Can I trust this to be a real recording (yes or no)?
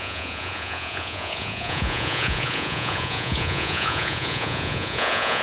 no